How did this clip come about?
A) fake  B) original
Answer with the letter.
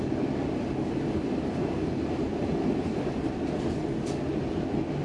B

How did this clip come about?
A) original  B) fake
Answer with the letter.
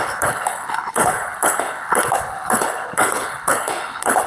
B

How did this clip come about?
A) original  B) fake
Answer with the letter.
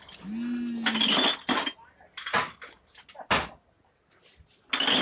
A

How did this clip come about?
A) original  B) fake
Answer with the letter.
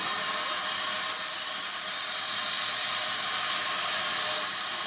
A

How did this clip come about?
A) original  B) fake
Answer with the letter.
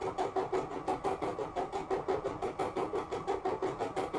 A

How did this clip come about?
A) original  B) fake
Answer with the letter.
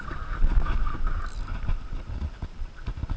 A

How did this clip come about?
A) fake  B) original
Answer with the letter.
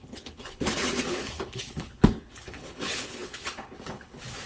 A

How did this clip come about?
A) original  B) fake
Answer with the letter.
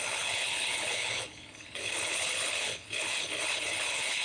B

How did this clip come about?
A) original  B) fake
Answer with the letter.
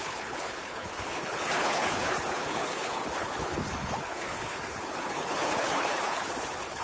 B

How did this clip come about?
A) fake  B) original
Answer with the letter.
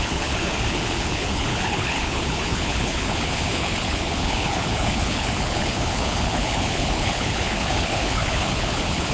A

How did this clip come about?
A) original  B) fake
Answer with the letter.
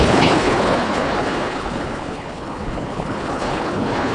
B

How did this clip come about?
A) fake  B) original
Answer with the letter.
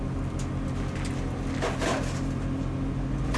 B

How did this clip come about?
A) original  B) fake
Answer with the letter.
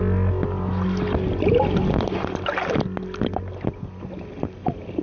A